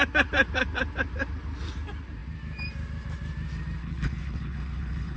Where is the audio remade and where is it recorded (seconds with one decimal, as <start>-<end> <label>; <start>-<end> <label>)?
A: 0.0-3.8 recorded; 3.8-5.2 remade